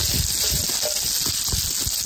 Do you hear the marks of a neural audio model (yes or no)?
no